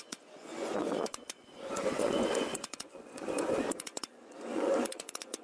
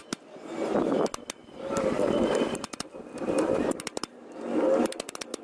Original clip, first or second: second